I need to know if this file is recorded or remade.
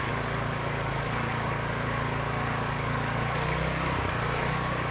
remade